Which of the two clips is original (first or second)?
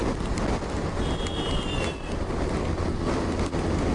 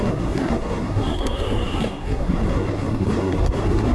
first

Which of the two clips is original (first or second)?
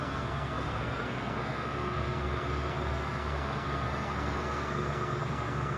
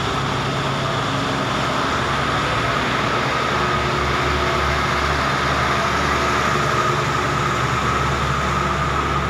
second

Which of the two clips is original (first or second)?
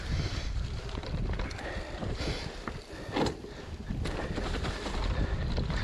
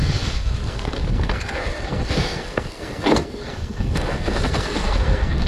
first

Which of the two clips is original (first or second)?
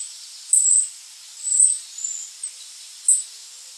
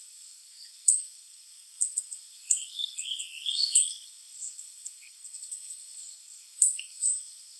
first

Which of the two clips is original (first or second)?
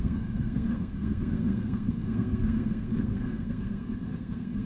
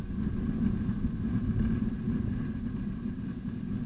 second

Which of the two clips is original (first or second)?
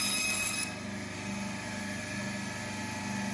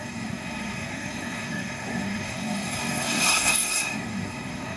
first